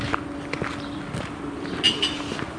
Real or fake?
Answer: real